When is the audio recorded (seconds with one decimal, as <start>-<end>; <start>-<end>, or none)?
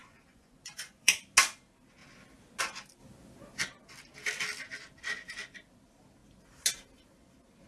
1.1-7.7